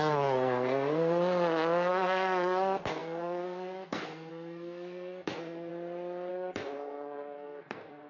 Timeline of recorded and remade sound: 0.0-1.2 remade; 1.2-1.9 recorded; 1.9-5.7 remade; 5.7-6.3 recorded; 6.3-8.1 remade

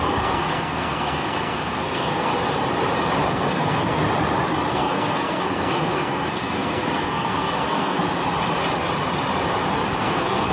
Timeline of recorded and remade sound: 0.0-2.3 remade; 2.3-3.3 recorded; 3.3-4.0 remade; 4.0-4.7 recorded; 4.7-8.0 remade; 8.0-10.0 recorded; 10.0-10.5 remade

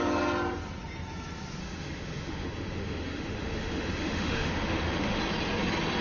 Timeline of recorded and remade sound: 0.0-1.6 recorded; 1.6-5.2 remade; 5.2-6.0 recorded

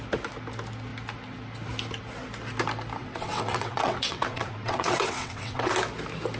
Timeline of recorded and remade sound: 0.0-3.0 recorded; 3.0-5.7 remade; 5.7-6.4 recorded

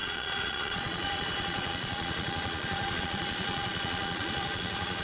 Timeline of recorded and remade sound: 0.0-5.0 remade

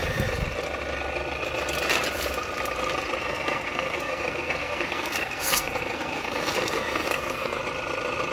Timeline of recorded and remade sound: 0.0-3.2 recorded; 3.2-7.6 remade; 7.6-8.3 recorded

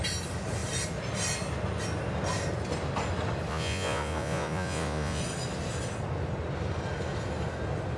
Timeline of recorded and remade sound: 0.0-3.5 recorded; 3.5-5.2 remade; 5.2-8.0 recorded